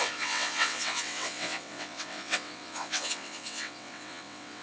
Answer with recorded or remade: remade